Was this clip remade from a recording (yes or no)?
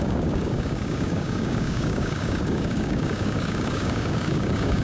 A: yes